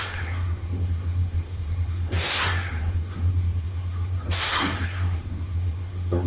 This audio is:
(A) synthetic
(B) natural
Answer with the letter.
A